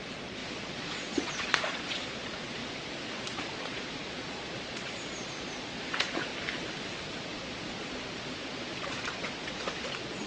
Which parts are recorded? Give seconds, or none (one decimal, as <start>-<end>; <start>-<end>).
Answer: 2.6-3.1; 6.3-7.3